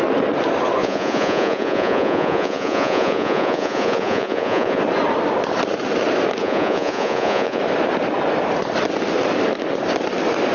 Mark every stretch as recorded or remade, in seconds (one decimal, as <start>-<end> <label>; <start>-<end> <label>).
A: 0.0-0.8 recorded; 0.8-4.8 remade; 4.8-6.4 recorded; 6.4-7.6 remade; 7.6-10.5 recorded